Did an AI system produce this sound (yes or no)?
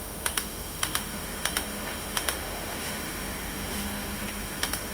yes